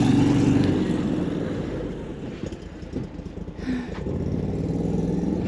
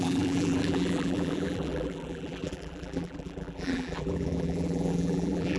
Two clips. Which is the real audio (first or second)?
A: first